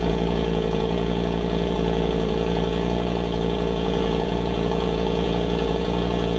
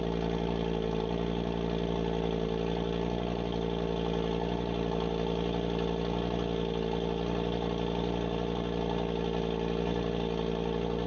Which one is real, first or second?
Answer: second